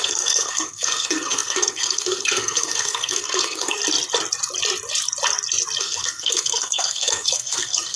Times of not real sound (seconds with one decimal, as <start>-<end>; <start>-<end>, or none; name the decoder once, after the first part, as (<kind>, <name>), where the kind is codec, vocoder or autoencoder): 0.0-3.8 (codec, SNAC); 5.8-8.0